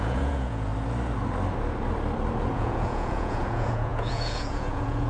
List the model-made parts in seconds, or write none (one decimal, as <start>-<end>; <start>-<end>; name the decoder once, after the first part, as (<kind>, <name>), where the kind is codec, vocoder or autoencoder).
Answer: 0.0-0.7 (vocoder, Vocos); 2.5-5.1

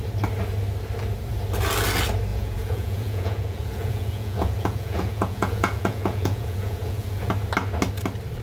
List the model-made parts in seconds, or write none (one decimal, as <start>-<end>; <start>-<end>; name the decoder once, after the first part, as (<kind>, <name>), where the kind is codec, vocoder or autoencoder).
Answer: 2.3-7.3 (vocoder, Vocos)

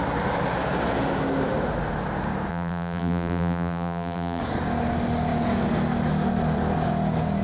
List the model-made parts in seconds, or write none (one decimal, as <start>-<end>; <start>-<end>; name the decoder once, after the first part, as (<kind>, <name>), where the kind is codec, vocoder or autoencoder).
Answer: 2.5-4.4 (vocoder, BigVGAN v2)